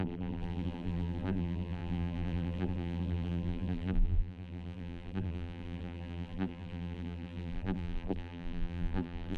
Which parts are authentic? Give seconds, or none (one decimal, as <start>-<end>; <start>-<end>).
none